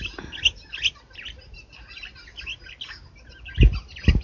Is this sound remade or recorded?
recorded